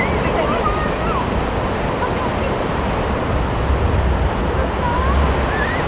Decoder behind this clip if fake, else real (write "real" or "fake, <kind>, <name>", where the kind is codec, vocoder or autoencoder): real